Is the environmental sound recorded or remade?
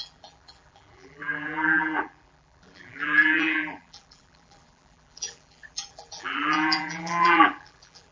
remade